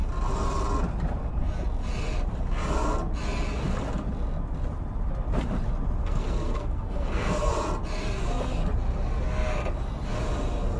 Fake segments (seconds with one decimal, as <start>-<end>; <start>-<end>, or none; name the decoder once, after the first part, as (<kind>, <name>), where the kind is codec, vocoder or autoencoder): 6.0-7.5 (codec, SNAC)